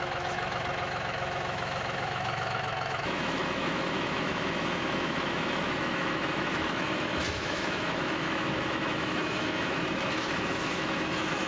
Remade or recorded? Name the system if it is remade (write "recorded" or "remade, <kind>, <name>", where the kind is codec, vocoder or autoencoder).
remade, autoencoder, DAC-VAE